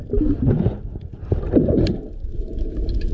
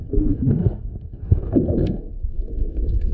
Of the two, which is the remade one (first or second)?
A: second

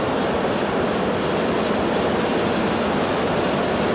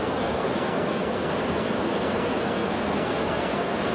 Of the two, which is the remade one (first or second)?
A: second